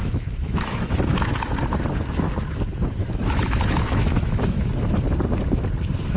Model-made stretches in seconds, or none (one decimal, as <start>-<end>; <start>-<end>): 0.0-1.5; 3.0-4.7

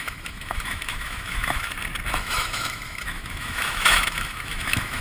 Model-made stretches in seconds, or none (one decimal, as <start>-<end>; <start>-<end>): 0.0-1.7; 2.2-5.0

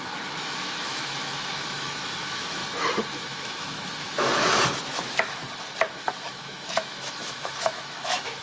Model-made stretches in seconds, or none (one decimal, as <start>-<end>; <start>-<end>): 0.0-2.6; 3.1-5.4; 6.0-8.4